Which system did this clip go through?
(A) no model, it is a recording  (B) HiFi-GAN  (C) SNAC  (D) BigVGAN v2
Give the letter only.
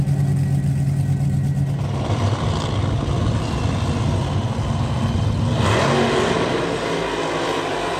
A